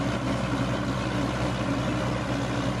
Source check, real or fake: real